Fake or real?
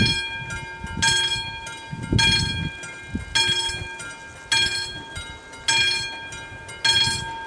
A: real